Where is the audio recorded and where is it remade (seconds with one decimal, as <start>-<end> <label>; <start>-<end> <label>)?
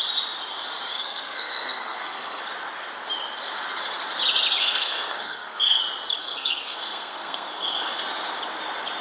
0.0-0.9 recorded; 0.9-2.4 remade; 2.4-4.6 recorded; 4.6-5.8 remade; 5.8-6.2 recorded; 6.2-8.0 remade; 8.0-9.0 recorded